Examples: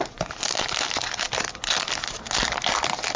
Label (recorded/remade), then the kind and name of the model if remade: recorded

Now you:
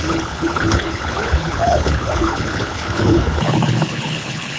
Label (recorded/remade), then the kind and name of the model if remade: remade, codec, HILCodec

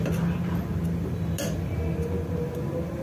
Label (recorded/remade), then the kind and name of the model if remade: recorded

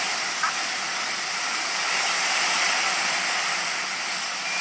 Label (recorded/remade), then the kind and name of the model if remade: recorded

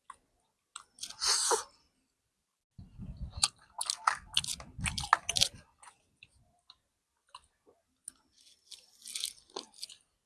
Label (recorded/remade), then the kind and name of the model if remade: recorded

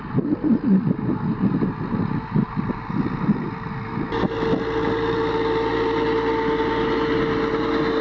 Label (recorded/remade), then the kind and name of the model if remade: recorded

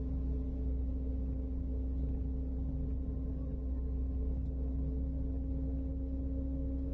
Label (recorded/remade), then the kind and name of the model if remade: recorded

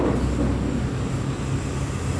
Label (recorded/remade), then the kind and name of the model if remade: recorded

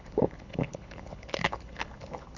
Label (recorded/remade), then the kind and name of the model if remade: remade, codec, HILCodec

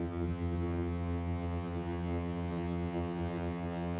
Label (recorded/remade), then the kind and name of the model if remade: remade, vocoder, HiFi-GAN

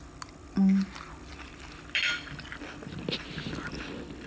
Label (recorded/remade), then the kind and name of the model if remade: recorded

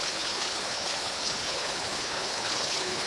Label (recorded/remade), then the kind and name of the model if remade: remade, codec, HILCodec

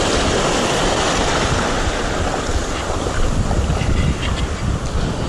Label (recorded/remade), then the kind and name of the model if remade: recorded